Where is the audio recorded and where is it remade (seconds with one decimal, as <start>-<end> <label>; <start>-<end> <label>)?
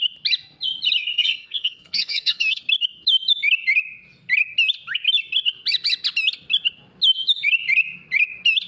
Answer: 0.0-1.0 recorded; 1.0-2.6 remade; 2.6-8.7 recorded